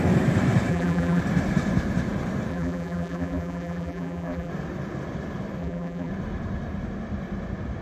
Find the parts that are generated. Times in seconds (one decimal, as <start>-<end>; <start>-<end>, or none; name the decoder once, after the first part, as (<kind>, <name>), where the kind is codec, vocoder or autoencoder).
0.7-1.2 (vocoder, BigVGAN v2); 2.5-4.5; 5.6-6.1